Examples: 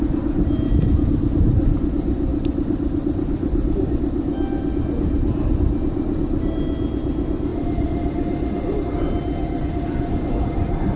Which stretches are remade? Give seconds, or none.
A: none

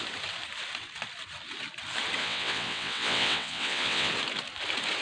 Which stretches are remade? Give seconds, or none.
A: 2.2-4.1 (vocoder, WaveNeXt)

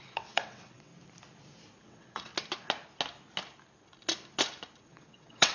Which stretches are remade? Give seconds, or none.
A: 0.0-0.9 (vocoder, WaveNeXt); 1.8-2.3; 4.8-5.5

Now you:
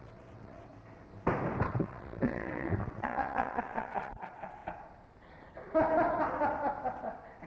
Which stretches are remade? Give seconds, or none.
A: 0.0-0.7 (vocoder, WaveNeXt); 1.7-4.6

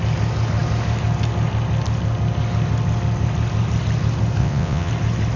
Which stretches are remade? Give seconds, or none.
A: 4.4-4.9 (vocoder, WaveNeXt)